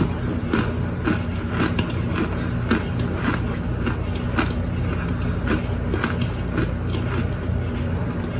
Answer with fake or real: real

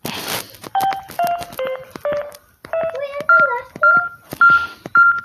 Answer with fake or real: real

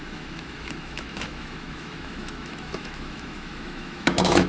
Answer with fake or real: fake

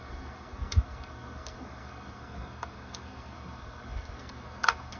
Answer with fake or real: fake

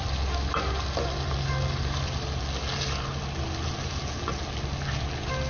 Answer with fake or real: real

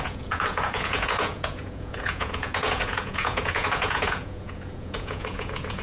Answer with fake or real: fake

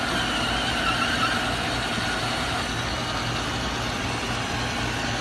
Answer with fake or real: real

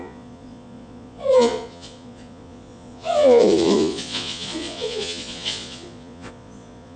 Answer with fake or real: fake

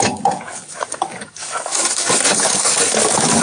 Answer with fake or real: fake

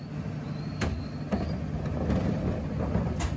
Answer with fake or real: real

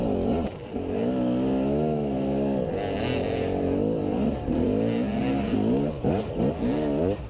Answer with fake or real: real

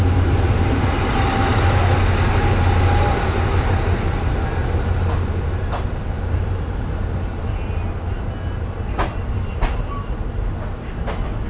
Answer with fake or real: real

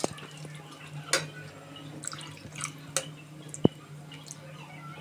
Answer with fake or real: real